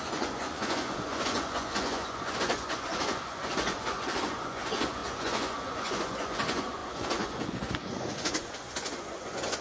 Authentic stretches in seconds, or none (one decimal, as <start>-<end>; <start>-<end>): none